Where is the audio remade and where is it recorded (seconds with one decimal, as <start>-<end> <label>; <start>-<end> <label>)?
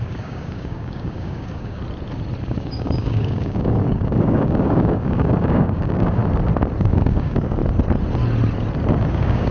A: 0.0-1.8 remade; 1.8-2.4 recorded; 2.4-6.2 remade; 6.2-6.8 recorded; 6.8-7.6 remade; 7.6-9.1 recorded; 9.1-9.5 remade